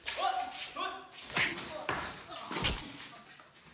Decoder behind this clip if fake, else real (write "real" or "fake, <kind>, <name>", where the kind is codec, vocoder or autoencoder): real